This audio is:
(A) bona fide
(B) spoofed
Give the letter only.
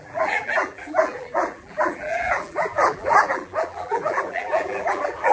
B